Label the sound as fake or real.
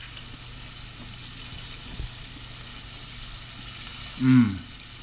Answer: real